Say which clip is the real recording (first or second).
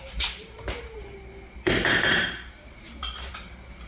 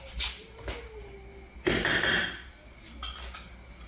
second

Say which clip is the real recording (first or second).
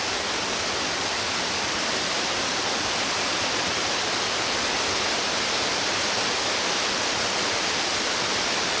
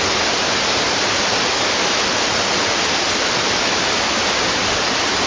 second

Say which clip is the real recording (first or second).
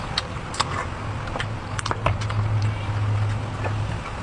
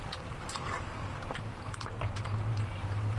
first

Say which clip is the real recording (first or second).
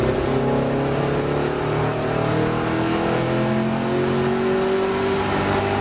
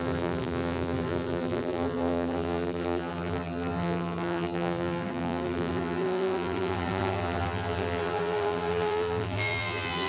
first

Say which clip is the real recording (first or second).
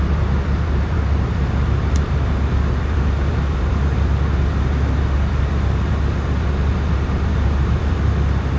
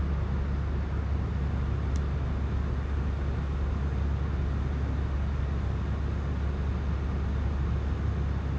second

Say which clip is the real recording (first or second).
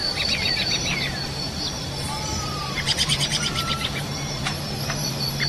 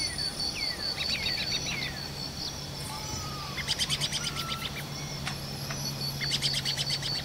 second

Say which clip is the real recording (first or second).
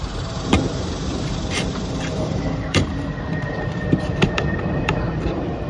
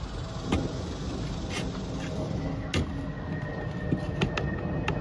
second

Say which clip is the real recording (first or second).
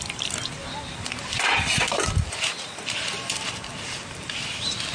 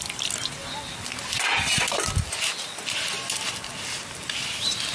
second